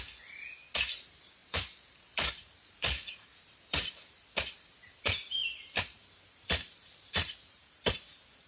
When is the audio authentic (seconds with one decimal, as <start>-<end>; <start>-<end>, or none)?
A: 0.0-1.4; 4.1-5.4